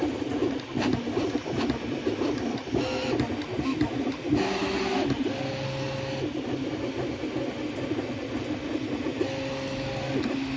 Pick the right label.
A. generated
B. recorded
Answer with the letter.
B